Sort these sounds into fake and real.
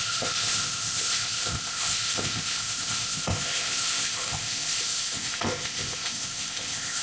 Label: fake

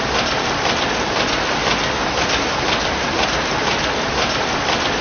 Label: real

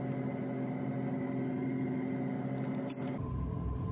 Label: real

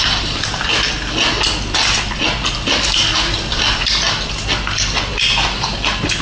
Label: real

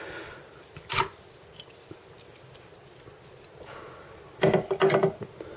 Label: real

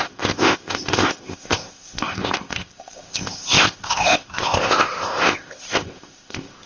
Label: fake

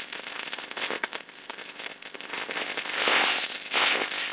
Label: fake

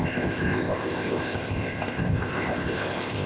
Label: fake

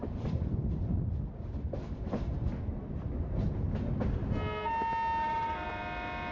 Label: real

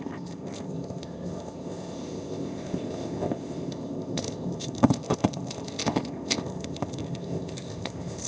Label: fake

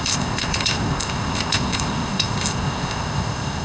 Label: fake